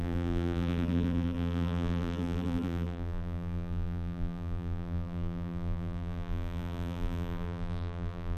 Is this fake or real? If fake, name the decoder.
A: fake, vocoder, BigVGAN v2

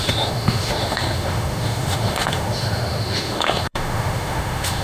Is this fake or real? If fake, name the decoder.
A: fake, autoencoder, DAC-VAE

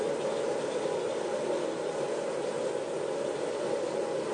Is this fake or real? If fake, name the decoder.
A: real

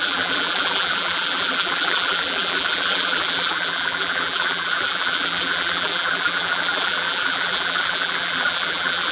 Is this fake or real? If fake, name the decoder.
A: fake, vocoder, BigVGAN v2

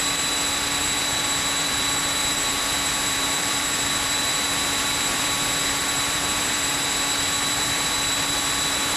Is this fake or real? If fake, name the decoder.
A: fake, vocoder, BigVGAN v2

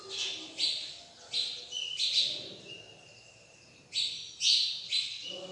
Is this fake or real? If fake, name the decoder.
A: real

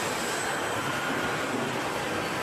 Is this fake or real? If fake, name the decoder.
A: real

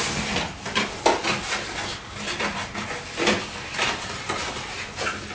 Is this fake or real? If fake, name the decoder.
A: real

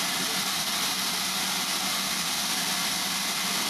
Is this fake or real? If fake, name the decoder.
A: real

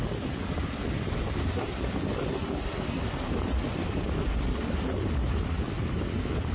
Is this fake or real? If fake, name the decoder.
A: real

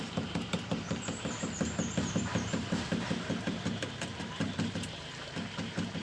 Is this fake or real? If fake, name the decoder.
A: fake, vocoder, BigVGAN v2